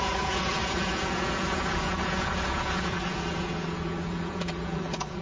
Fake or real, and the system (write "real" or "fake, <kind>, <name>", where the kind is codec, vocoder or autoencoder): fake, vocoder, Vocos